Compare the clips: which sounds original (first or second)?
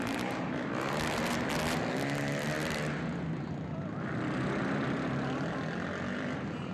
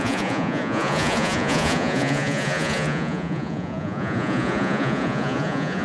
first